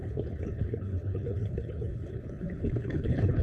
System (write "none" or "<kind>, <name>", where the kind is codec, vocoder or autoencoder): codec, HILCodec